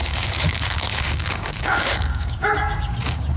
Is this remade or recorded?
remade